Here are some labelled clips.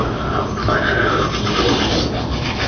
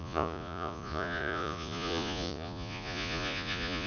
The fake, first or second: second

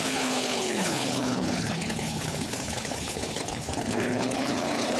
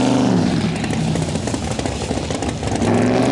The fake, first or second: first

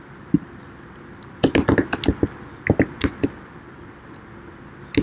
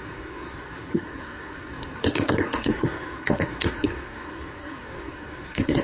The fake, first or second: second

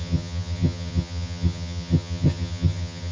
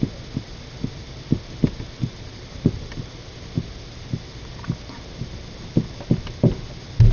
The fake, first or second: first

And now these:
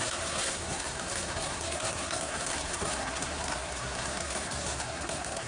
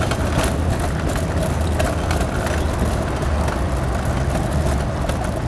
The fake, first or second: first